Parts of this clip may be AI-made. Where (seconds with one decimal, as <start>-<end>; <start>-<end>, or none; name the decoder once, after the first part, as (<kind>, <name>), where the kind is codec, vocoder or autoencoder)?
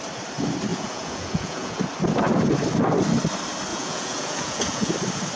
0.7-1.8 (vocoder, Vocos); 3.7-4.9